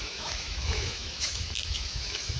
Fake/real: fake